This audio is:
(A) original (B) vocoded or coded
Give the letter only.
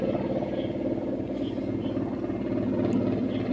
A